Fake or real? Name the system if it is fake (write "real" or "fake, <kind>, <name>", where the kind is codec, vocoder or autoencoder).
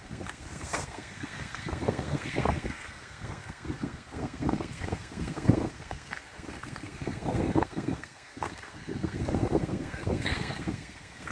fake, codec, SNAC